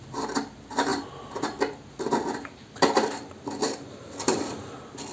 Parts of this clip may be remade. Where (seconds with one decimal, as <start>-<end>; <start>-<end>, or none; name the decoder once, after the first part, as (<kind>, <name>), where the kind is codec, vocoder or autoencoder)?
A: 0.0-0.9 (vocoder, BigVGAN v2); 4.0-5.1